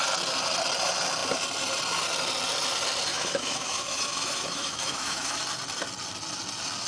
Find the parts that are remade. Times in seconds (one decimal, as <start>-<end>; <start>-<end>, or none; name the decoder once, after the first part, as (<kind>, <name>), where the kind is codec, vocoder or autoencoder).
3.1-5.4 (autoencoder, DAC-VAE)